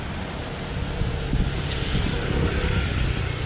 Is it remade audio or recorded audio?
recorded